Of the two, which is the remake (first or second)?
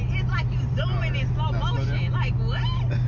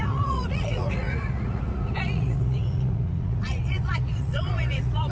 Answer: second